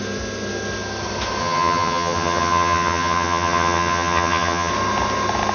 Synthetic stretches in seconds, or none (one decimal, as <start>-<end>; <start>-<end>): 1.4-4.7